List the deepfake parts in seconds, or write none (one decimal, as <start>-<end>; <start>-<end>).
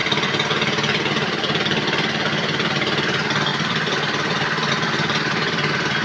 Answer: 2.3-6.0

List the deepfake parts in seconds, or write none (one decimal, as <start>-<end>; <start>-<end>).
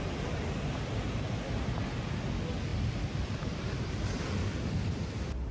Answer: 2.7-4.8